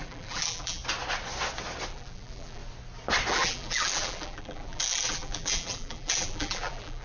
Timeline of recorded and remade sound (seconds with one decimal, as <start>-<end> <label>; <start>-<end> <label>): 0.0-0.8 remade; 0.8-1.9 recorded; 1.9-2.6 remade; 2.6-3.3 recorded; 3.3-7.0 remade